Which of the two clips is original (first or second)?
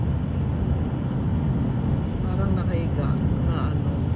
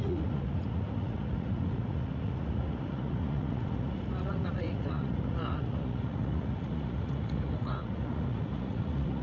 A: first